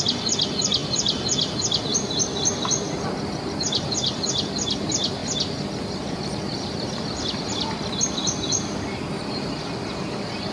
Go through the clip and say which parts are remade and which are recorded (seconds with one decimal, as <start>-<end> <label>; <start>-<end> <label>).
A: 0.0-10.5 recorded